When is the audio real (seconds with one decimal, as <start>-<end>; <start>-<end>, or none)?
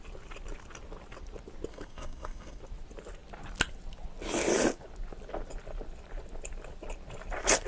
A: 0.0-1.7; 2.6-7.7